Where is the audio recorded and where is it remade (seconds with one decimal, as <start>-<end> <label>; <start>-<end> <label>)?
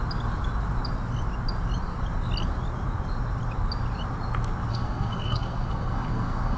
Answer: 0.0-4.7 recorded; 4.7-6.6 remade